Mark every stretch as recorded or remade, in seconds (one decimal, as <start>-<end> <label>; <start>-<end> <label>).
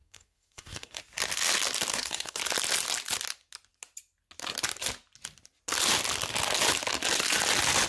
0.0-1.0 remade; 1.0-1.9 recorded; 1.9-2.4 remade; 2.4-7.9 recorded